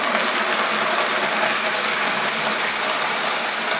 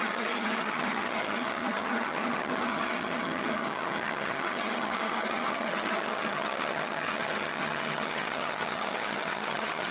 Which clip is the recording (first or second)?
first